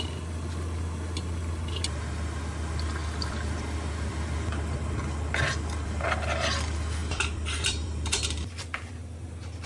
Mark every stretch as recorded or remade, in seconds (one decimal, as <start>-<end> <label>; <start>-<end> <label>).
0.0-3.0 recorded; 3.0-4.1 remade; 4.1-7.0 recorded; 7.0-8.9 remade; 8.9-9.7 recorded